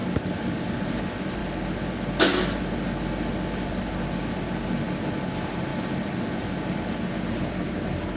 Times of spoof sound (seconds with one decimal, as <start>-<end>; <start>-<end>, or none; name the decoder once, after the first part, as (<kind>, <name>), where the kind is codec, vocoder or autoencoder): 0.0-1.4 (vocoder, BigVGAN v2); 5.3-5.7; 7.7-8.2